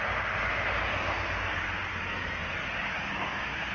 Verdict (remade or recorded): recorded